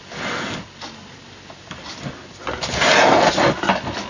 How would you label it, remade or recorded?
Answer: recorded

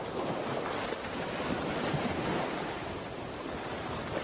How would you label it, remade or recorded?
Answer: recorded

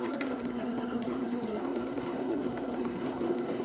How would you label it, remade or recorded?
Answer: remade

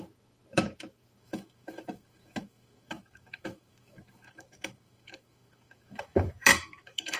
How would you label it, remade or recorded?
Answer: remade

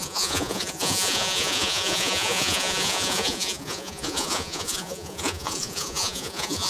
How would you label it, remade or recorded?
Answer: remade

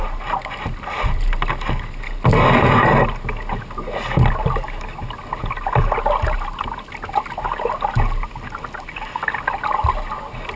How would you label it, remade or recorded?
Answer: recorded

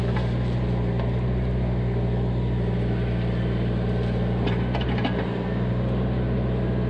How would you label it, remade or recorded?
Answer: recorded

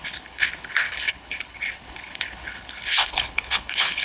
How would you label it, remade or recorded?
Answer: remade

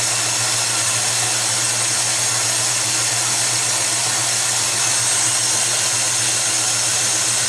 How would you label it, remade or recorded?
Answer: recorded